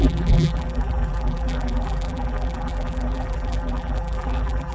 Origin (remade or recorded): remade